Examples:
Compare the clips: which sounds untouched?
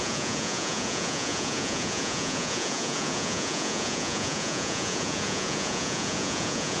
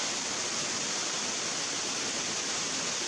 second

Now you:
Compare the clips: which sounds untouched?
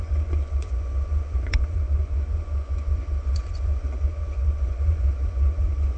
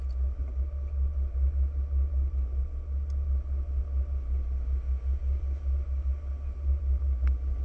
second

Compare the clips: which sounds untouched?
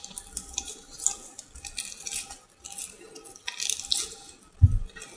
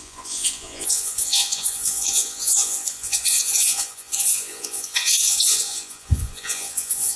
first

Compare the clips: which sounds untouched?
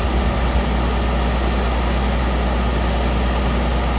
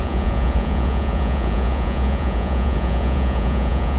first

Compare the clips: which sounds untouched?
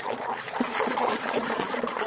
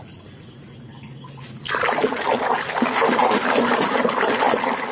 second